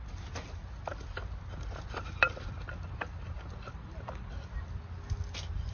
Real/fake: real